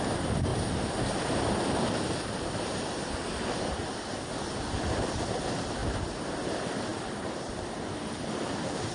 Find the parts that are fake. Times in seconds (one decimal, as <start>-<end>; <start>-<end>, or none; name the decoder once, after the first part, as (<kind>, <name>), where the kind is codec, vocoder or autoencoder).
5.8-6.5 (vocoder, BigVGAN v2); 6.9-8.9